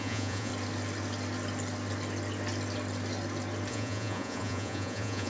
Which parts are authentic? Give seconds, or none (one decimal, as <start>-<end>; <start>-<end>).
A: 0.5-3.7